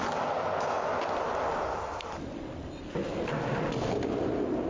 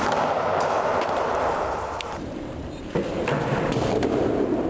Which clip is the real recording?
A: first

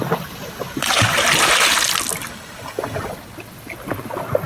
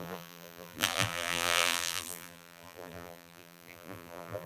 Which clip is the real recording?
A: first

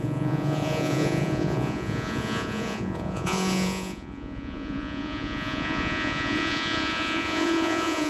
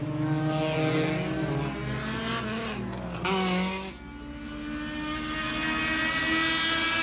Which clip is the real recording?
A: second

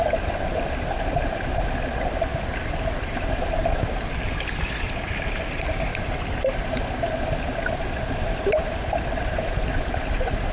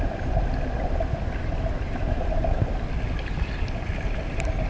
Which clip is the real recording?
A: second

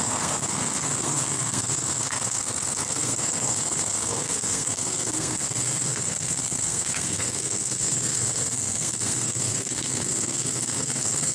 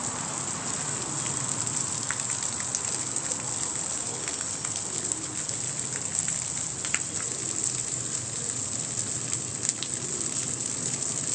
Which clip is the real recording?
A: second